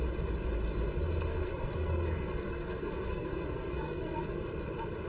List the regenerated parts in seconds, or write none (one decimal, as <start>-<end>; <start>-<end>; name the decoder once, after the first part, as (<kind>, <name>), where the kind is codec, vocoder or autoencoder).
1.3-4.4 (codec, SNAC)